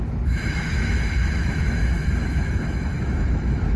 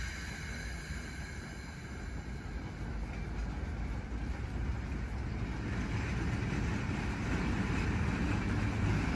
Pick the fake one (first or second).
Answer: first